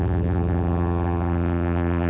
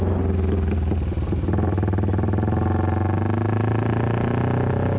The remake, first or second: first